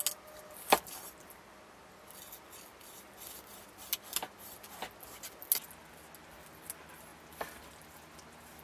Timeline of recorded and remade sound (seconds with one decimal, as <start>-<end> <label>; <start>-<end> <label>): 0.0-8.6 recorded